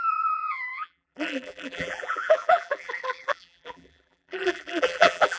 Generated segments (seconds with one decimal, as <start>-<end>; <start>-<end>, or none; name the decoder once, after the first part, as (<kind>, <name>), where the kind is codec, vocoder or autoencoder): 0.0-5.4 (vocoder, BigVGAN v2)